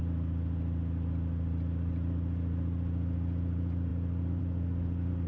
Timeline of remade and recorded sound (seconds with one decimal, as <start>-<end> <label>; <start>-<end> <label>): 0.0-5.3 recorded